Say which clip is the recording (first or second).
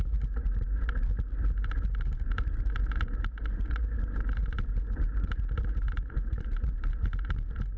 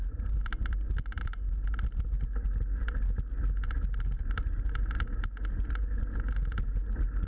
second